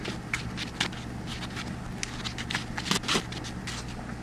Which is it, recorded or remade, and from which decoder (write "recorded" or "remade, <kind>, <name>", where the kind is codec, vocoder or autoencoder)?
recorded